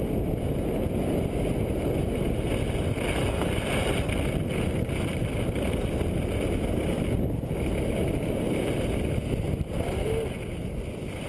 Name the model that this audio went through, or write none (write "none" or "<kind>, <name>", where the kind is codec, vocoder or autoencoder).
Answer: none